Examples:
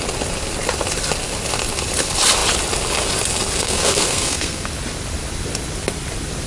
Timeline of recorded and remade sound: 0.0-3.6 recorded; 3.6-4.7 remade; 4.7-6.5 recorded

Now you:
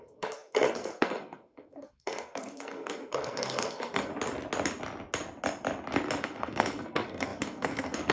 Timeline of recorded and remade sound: 0.0-4.1 remade; 4.1-6.2 recorded; 6.2-8.1 remade

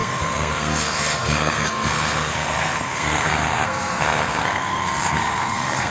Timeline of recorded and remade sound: 0.0-5.9 remade

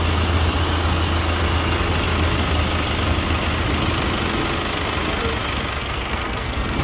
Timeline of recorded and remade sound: 0.0-5.8 recorded; 5.8-6.8 remade

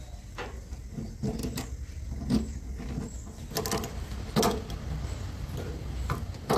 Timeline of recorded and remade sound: 0.0-6.6 recorded

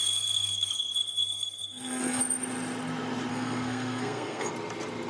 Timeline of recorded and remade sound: 0.0-2.2 remade; 2.2-3.3 recorded; 3.3-4.5 remade; 4.5-5.1 recorded

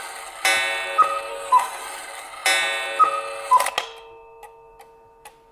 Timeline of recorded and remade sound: 0.0-1.3 recorded; 1.3-1.8 remade; 1.8-5.5 recorded

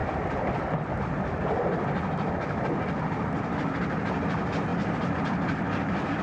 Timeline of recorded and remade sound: 0.0-6.2 recorded